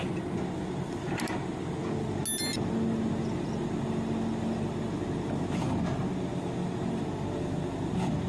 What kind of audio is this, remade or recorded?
recorded